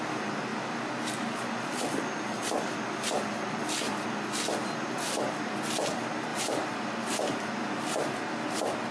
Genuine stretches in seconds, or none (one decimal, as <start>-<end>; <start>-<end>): 0.0-0.5; 2.8-4.6; 5.4-6.3; 8.2-8.9